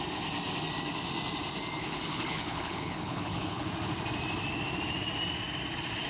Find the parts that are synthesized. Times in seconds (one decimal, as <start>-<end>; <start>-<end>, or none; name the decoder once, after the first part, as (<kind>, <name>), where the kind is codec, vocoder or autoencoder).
1.8-3.7 (codec, HILCodec)